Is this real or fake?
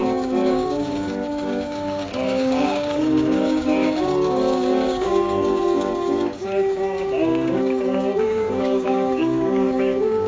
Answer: fake